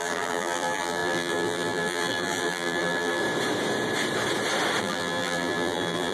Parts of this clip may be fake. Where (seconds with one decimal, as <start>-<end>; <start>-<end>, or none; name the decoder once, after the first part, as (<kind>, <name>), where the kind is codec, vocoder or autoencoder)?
0.0-3.2 (vocoder, BigVGAN v2); 4.8-6.1